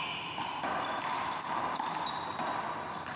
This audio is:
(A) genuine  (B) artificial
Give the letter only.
A